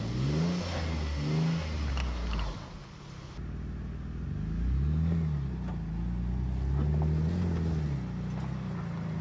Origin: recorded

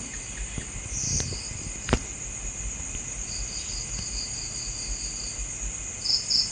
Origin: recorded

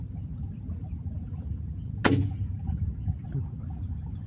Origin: recorded